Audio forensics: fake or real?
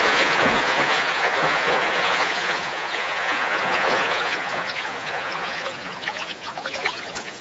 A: fake